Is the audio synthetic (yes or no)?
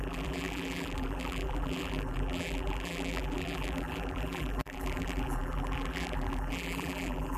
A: yes